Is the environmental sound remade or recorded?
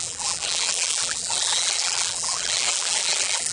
remade